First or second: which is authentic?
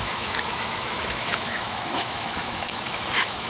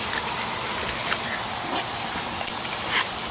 second